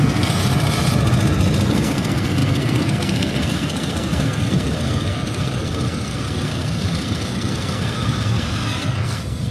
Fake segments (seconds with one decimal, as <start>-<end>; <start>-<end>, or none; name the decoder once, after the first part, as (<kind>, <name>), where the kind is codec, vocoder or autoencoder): 0.0-0.4 (codec, SNAC); 1.7-9.5